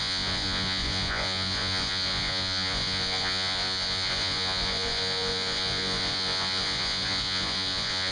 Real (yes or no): no